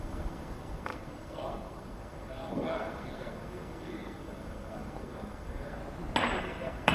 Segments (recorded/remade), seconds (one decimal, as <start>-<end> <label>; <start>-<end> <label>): 0.0-5.8 remade; 5.8-6.4 recorded; 6.4-6.9 remade